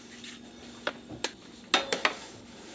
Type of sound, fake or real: real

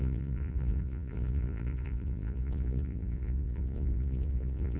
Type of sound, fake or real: fake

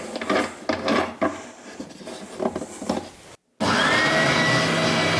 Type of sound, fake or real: real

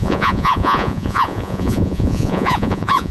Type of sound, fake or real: fake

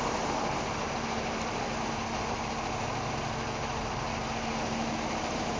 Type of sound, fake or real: real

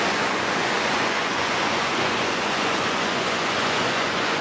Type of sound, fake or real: fake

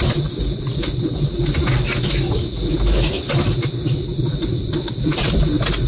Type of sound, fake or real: real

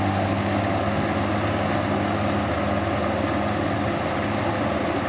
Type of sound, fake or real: real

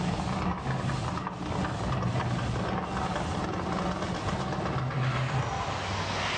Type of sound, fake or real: real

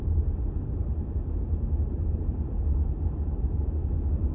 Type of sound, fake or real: real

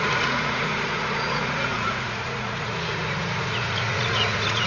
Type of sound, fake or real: fake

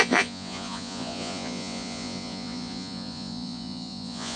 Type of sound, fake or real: fake